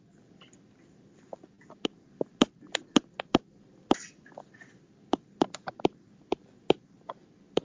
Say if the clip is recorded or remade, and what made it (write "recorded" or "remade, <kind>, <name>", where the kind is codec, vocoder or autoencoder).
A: recorded